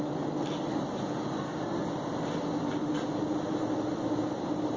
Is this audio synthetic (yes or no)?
no